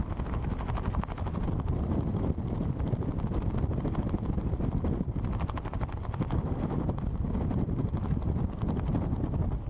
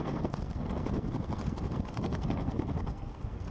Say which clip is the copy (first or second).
second